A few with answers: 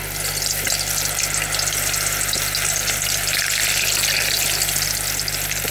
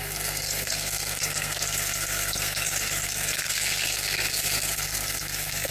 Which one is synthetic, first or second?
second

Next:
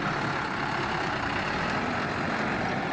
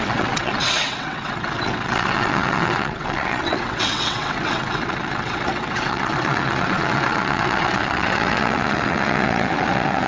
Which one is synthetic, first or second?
second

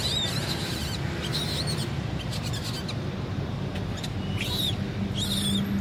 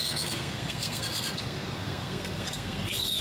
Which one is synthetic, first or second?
second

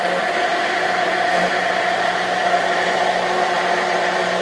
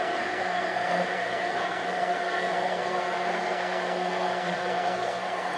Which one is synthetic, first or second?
second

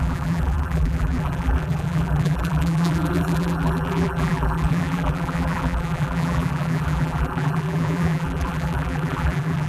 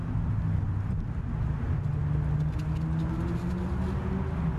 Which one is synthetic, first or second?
first